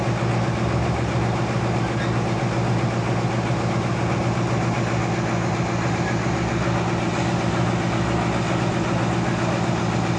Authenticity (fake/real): real